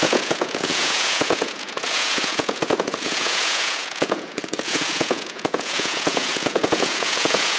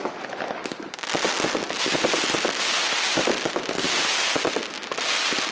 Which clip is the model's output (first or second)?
first